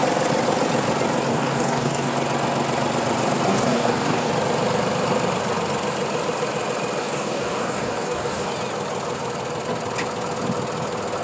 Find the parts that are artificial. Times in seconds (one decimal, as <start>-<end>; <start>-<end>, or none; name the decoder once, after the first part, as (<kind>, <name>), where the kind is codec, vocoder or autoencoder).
1.3-2.1 (codec, DAC); 3.5-4.3; 7.0-8.5